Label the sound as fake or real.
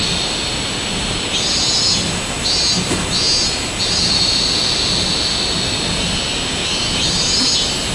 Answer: real